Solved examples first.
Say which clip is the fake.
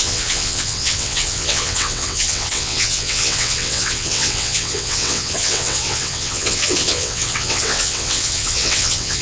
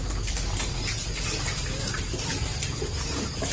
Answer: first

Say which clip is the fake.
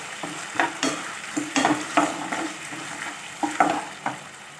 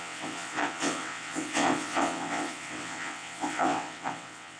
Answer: second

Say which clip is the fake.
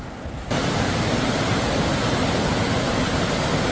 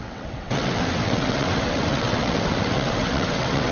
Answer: second